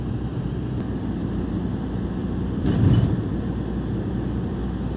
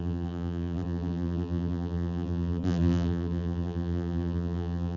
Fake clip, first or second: second